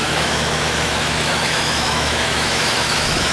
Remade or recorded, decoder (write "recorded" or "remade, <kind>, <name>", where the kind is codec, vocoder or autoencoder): remade, autoencoder, DAC-VAE